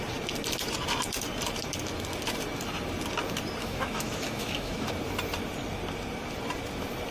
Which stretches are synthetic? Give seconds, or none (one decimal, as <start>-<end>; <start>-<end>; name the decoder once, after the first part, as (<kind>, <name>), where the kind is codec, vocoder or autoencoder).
3.6-4.9 (autoencoder, DAC-VAE)